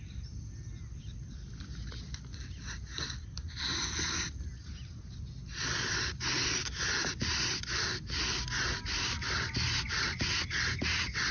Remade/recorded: recorded